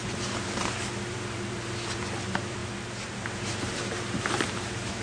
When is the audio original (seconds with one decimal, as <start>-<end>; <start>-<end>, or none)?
none